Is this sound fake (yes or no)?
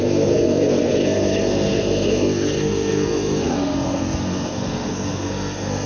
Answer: yes